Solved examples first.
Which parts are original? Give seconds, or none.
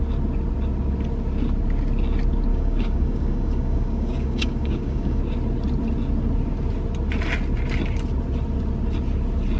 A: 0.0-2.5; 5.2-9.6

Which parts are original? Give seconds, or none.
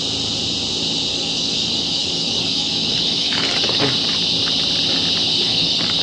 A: 0.0-1.1; 3.8-5.3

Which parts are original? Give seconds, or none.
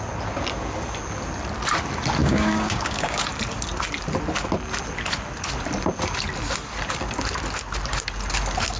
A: 0.0-2.2; 3.2-8.8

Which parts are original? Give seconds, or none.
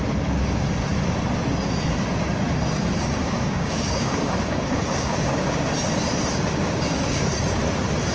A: 0.0-3.2; 5.7-6.3; 7.2-8.1